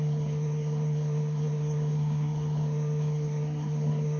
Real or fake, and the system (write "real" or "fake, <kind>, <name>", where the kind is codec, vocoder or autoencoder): fake, codec, SNAC